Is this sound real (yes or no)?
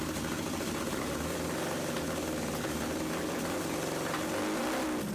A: yes